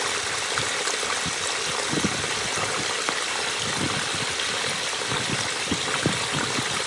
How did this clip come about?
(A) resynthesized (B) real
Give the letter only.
B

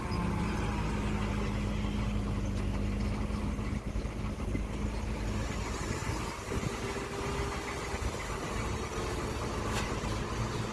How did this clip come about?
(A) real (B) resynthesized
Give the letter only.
A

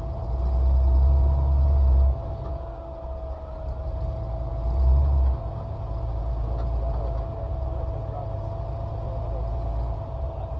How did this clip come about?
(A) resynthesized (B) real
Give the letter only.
B